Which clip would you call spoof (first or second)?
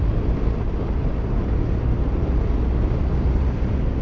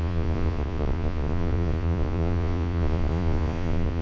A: second